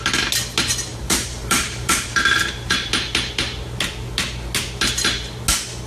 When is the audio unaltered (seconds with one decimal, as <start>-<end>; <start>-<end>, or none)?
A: 0.0-0.9; 2.9-5.9